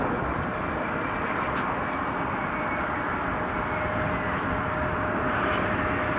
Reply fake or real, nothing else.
real